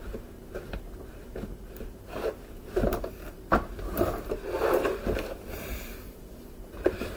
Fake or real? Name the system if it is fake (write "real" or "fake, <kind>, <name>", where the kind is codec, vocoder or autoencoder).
fake, vocoder, BigVGAN v2